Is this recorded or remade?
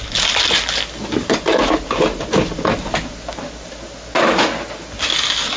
recorded